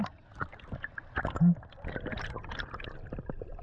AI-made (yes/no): no